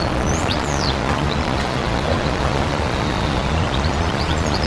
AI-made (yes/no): yes